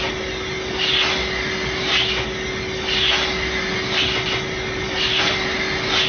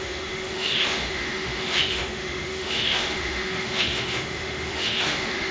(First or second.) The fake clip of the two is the second